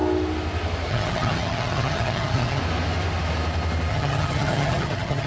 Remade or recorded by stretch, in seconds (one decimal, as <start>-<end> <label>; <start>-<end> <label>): 0.0-0.9 recorded; 0.9-2.6 remade; 2.6-3.9 recorded; 3.9-5.3 remade